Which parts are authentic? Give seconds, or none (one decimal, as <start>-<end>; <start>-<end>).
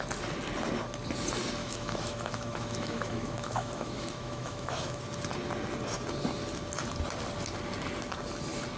0.0-1.6; 5.0-8.8